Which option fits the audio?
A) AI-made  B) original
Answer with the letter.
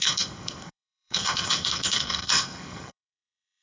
A